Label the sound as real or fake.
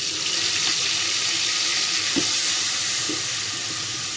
real